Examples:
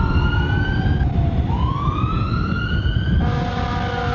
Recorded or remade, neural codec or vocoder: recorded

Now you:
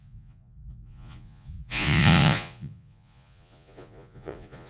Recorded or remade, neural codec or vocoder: remade, vocoder, Vocos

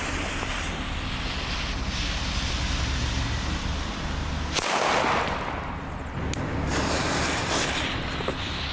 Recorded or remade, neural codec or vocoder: recorded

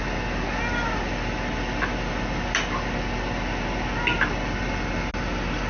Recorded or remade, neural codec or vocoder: recorded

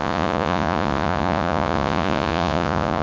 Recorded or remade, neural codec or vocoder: remade, vocoder, Vocos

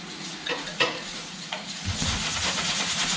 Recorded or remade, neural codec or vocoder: remade, vocoder, Vocos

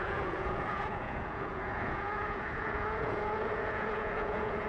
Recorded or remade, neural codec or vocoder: remade, vocoder, Vocos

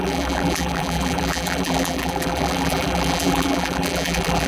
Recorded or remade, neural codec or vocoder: remade, vocoder, BigVGAN v2